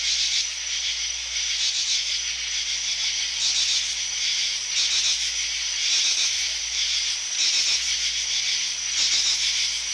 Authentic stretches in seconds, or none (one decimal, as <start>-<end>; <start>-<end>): 0.0-9.9